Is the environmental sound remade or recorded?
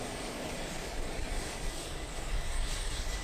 remade